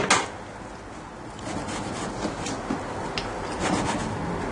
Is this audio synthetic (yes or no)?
no